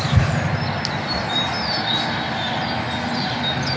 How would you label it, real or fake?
real